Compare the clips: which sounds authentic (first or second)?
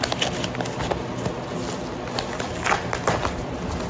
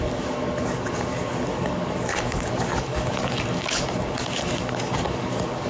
first